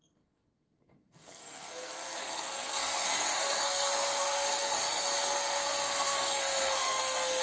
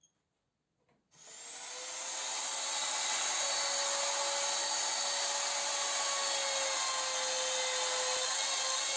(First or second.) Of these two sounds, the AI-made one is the first